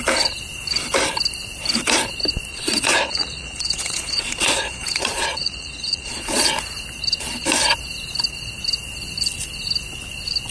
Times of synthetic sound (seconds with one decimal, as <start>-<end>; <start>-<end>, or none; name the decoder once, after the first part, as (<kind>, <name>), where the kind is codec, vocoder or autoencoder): 2.5-6.5 (vocoder, Vocos)